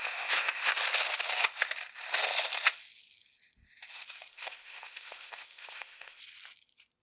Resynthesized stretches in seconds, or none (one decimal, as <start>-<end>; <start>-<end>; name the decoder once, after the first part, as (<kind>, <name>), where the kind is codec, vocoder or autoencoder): 0.0-0.7 (codec, ZipCodec); 4.3-6.2